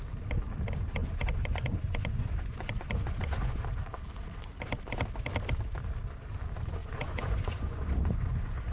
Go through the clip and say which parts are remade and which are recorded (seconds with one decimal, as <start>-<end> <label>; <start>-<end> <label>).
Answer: 0.0-1.0 recorded; 1.0-3.6 remade; 3.6-6.8 recorded; 6.8-8.7 remade

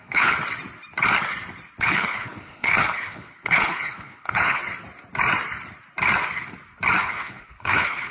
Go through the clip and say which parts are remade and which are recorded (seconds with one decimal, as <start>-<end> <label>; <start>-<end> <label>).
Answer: 0.0-0.4 remade; 0.4-1.8 recorded; 1.8-4.6 remade; 4.6-7.0 recorded; 7.0-8.1 remade